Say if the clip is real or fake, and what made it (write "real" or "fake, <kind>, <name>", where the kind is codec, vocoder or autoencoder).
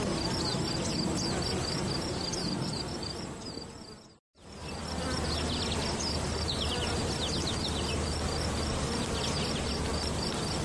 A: real